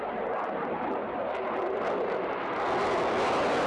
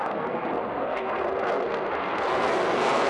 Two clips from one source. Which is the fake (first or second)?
second